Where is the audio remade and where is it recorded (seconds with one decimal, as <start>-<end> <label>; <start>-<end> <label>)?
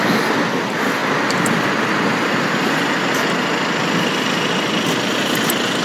0.0-5.8 recorded